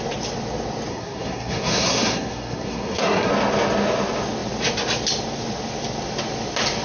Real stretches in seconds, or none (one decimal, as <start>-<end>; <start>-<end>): 0.0-0.9; 3.3-6.8